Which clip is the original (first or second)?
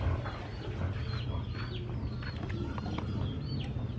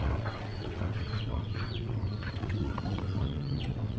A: first